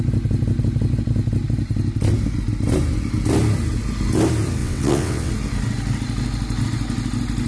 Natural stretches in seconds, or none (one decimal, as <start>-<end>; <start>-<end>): 0.0-4.6; 5.3-7.5